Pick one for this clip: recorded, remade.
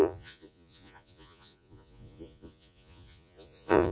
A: remade